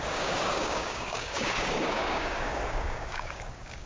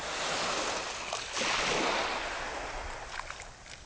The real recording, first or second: second